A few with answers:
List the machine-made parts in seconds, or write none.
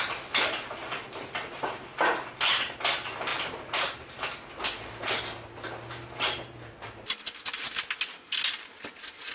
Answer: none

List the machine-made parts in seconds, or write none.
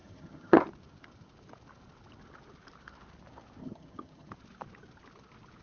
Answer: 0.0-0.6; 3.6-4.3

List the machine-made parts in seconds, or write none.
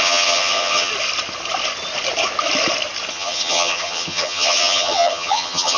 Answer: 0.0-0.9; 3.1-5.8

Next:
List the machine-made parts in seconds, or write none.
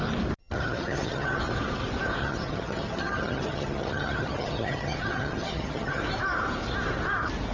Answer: 0.4-1.4; 2.2-6.0